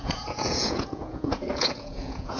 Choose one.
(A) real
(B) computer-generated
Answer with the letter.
B